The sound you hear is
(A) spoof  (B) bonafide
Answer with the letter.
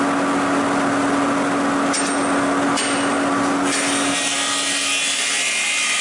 B